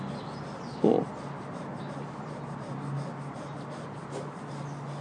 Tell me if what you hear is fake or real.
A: real